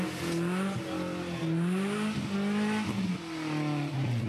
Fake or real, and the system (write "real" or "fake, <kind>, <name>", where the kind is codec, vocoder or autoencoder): real